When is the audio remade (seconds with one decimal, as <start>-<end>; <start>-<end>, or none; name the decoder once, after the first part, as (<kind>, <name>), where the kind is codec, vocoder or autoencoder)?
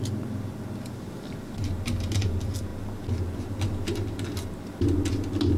none